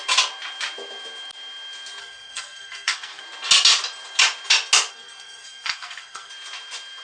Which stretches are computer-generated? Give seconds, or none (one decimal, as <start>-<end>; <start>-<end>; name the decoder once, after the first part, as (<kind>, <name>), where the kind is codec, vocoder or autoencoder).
2.0-3.2 (codec, SNAC); 4.9-6.3